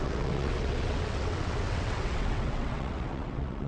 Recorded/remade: remade